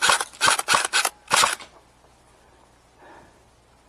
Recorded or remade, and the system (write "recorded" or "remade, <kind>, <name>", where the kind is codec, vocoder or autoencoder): recorded